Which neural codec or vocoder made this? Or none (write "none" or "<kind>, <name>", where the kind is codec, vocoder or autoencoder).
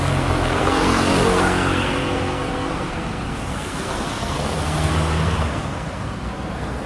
codec, SNAC